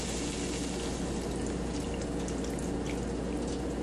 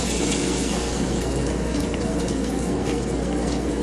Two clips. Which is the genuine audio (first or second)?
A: first